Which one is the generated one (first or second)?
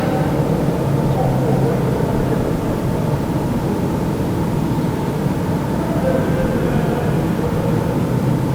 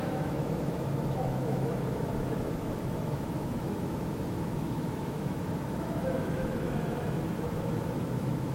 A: second